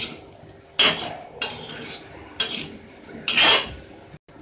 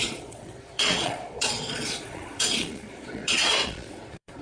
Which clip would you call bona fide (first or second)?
first